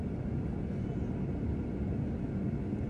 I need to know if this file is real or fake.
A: real